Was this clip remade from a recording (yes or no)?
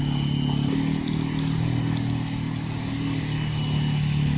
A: no